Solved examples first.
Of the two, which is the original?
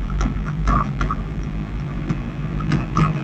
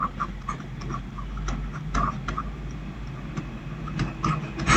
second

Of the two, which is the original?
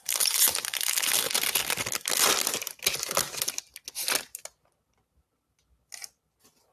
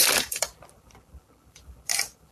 first